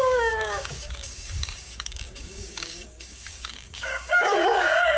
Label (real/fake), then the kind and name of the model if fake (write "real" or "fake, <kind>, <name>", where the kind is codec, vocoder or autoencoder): fake, codec, DAC